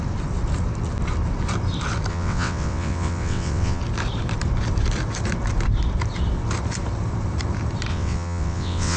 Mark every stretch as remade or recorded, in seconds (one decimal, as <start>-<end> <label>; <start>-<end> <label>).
0.0-2.1 recorded; 2.1-3.8 remade; 3.8-7.9 recorded; 7.9-9.0 remade